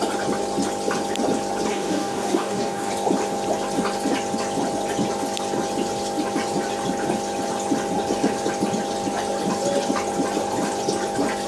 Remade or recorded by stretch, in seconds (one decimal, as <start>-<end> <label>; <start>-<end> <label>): 0.0-1.7 recorded; 1.7-2.9 remade; 2.9-11.5 recorded